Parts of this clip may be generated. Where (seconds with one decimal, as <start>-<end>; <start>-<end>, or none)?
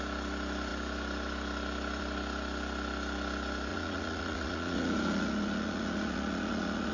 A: 3.7-6.9